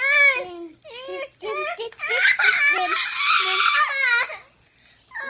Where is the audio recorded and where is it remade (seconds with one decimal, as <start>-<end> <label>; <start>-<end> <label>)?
0.0-5.3 recorded